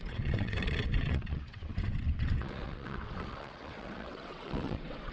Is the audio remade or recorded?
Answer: remade